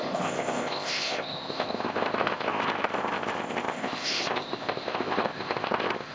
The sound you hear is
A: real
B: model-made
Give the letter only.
B